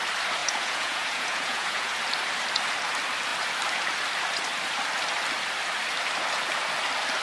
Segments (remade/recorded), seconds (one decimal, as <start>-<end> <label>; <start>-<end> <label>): 0.0-0.4 recorded; 0.4-2.0 remade; 2.0-7.2 recorded